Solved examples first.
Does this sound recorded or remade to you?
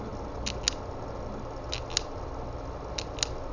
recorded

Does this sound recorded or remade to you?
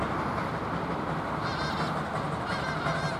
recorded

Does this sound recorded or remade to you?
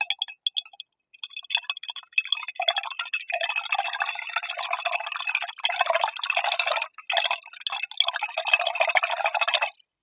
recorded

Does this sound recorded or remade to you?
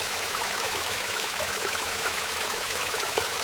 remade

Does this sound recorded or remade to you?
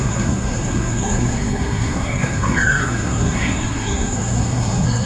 remade